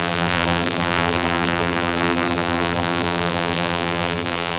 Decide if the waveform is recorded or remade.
remade